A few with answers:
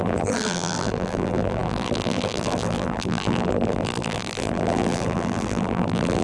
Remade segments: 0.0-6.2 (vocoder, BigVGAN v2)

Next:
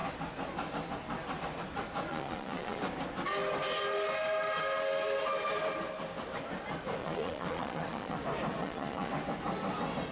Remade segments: 2.1-2.8 (vocoder, Vocos); 7.0-8.2; 8.6-9.1